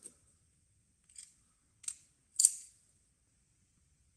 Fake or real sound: real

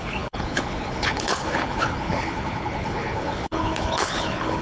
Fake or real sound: fake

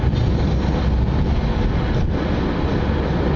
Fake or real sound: real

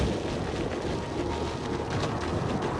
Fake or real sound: real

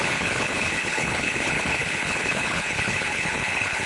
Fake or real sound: fake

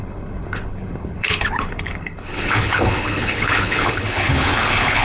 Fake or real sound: fake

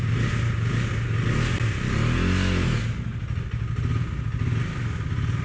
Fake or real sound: real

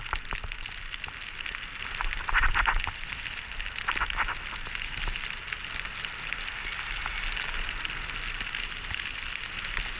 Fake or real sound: real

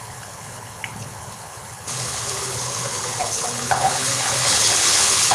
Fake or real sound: fake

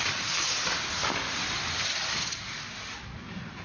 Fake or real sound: real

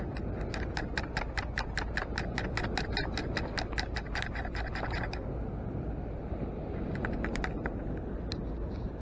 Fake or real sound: real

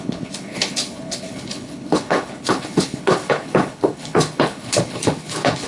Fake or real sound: fake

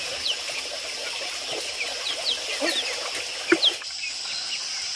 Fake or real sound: real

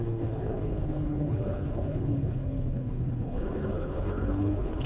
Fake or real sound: fake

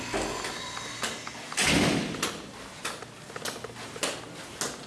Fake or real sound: real